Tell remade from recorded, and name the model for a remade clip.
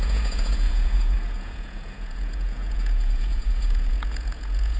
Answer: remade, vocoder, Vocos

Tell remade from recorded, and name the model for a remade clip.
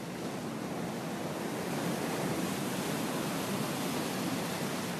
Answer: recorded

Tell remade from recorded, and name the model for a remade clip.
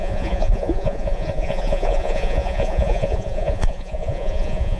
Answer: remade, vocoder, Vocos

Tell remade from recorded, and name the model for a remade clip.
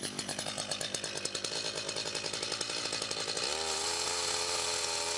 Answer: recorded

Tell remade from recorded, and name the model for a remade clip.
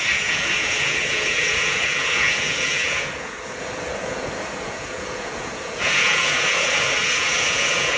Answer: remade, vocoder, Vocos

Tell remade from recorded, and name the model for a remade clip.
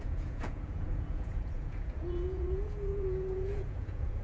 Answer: remade, vocoder, Vocos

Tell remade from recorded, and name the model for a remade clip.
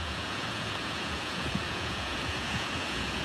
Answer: remade, vocoder, Vocos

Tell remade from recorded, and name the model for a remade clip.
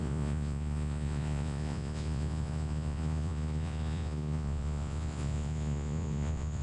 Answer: remade, vocoder, Vocos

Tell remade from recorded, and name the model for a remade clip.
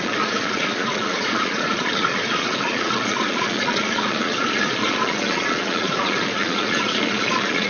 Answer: remade, vocoder, Vocos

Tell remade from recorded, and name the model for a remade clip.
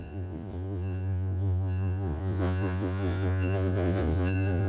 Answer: remade, vocoder, Vocos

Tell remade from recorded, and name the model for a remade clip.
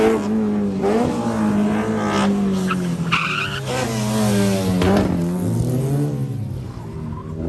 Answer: recorded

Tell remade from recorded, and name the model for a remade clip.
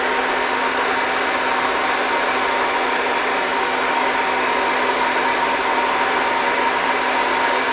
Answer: recorded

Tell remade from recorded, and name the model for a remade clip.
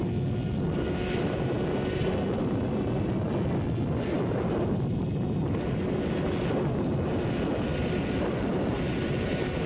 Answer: recorded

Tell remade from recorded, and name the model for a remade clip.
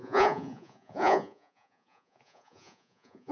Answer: remade, vocoder, Vocos